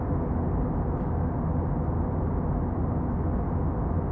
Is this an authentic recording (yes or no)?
yes